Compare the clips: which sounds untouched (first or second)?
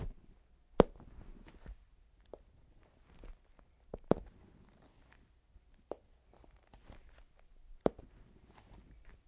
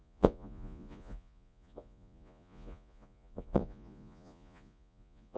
first